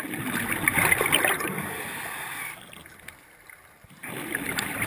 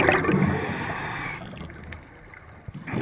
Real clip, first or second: second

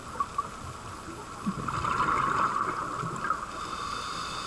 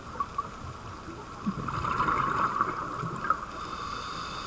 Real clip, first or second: first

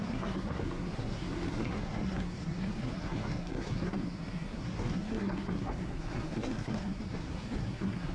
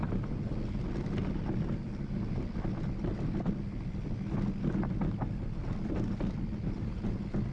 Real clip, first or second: second